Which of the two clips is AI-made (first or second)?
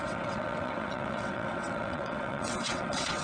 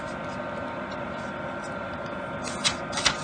first